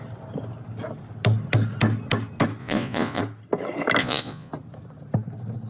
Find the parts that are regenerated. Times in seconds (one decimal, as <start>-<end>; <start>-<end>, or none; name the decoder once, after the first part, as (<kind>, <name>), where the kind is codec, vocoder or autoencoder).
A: 2.6-3.2 (vocoder, Vocos); 4.0-4.5